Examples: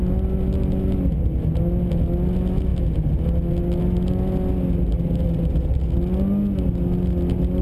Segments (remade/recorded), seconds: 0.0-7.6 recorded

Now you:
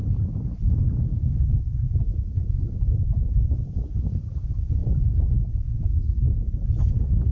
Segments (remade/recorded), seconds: 0.0-0.8 remade; 0.8-2.1 recorded; 2.1-4.3 remade; 4.3-4.8 recorded; 4.8-6.3 remade; 6.3-7.3 recorded

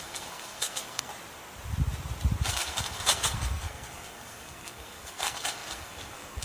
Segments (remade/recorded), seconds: 0.0-1.1 remade; 1.1-2.5 recorded; 2.5-6.4 remade

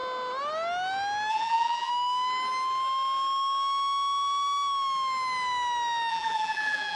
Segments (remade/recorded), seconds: 0.0-1.3 recorded; 1.3-1.9 remade; 1.9-6.1 recorded; 6.1-7.0 remade

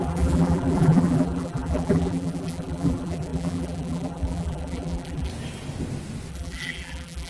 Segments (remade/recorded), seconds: 0.0-5.3 remade; 5.3-6.3 recorded; 6.3-7.3 remade